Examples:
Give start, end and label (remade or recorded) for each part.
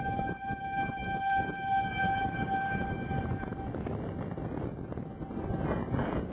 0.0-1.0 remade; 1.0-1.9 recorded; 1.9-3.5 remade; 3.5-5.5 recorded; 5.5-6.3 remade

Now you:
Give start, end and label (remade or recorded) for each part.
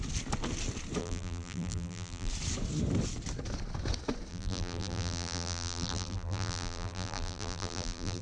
0.0-1.0 recorded; 1.0-2.3 remade; 2.3-4.3 recorded; 4.3-8.2 remade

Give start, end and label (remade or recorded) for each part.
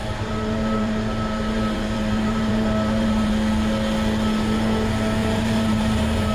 0.0-3.3 remade; 3.3-5.2 recorded; 5.2-6.3 remade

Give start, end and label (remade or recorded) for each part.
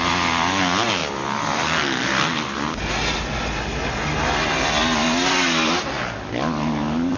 0.0-7.2 recorded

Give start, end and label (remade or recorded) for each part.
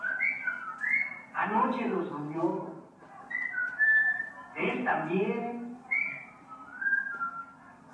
0.0-2.5 recorded; 2.5-3.2 remade; 3.2-3.6 recorded; 3.6-4.3 remade; 4.3-7.9 recorded